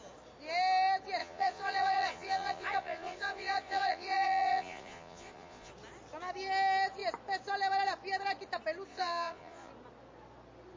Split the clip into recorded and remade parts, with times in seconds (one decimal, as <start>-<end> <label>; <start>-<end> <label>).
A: 0.0-1.2 recorded; 1.2-5.7 remade; 5.7-8.9 recorded; 8.9-9.7 remade; 9.7-10.8 recorded